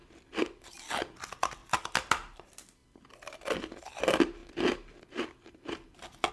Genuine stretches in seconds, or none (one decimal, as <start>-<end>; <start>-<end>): 0.0-6.3